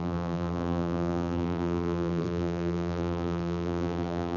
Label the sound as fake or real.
fake